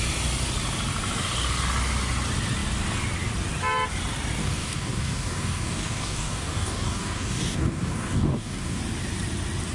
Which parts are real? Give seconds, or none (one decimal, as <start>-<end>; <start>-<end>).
0.0-4.4; 8.8-9.7